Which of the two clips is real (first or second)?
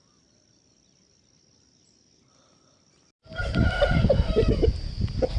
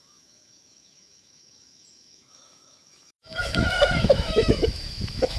first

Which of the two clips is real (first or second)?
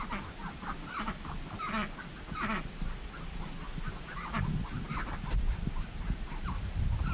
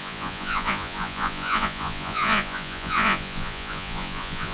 first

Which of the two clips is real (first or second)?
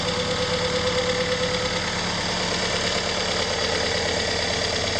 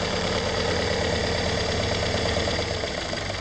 first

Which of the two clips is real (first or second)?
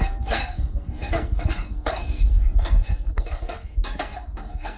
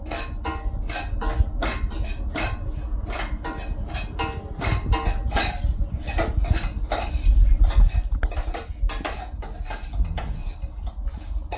second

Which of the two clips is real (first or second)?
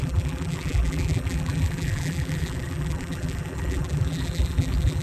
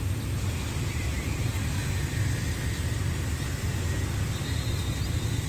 second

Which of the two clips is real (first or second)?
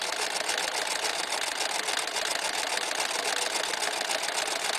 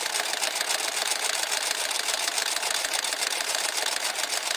first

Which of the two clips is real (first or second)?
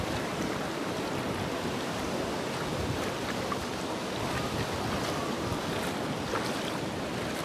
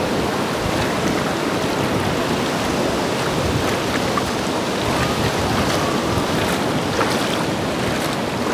second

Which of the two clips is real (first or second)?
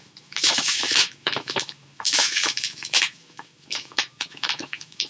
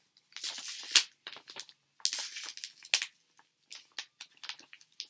second